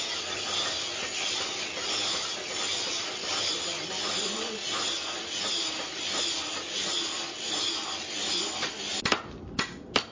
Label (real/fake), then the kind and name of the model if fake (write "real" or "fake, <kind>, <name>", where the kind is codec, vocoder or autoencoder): real